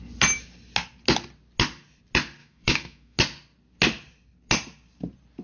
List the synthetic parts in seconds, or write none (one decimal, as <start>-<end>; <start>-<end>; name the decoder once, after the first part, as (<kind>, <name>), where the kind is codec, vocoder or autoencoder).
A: 2.4-3.2 (autoencoder, DAC-VAE)